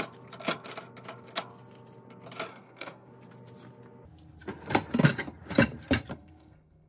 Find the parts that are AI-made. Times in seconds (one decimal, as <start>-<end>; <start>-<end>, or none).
2.5-3.1; 6.1-6.9